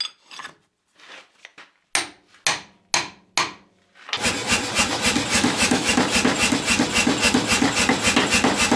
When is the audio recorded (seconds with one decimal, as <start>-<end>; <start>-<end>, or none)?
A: 0.0-5.3; 5.9-8.8